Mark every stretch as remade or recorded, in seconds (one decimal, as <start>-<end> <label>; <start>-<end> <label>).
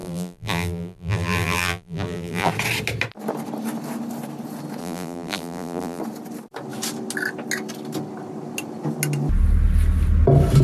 0.0-2.5 remade; 2.5-4.8 recorded; 4.8-6.0 remade; 6.0-10.6 recorded